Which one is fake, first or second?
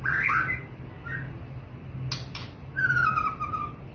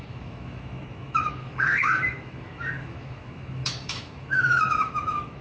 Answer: second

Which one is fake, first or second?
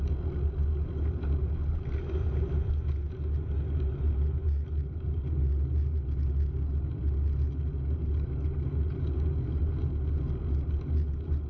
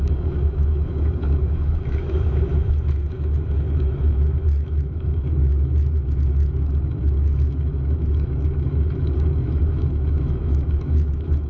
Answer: second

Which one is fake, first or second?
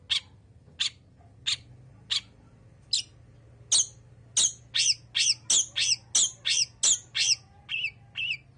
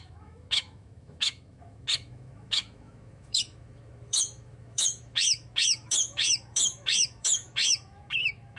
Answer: second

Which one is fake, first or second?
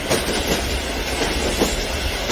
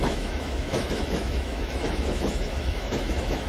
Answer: second